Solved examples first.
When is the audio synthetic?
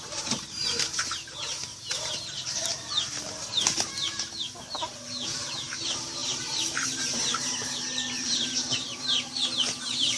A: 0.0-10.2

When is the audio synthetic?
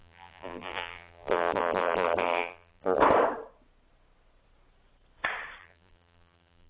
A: 0.0-3.0; 5.6-6.7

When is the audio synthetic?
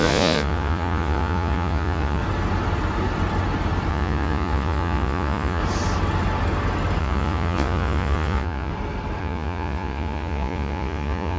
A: 0.0-2.2; 3.9-5.6; 7.0-8.7; 9.2-11.4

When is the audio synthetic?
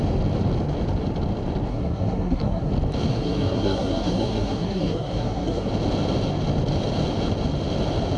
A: 1.7-2.7; 3.1-5.7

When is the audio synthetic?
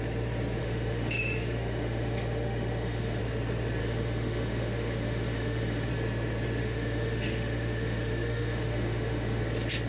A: 0.6-3.2; 3.8-5.9; 6.6-9.4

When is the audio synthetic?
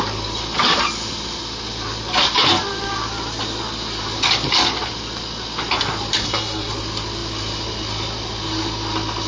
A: 6.2-6.7